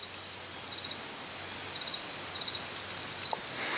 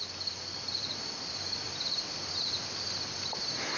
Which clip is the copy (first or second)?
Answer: second